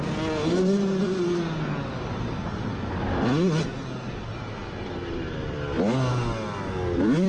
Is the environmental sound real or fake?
real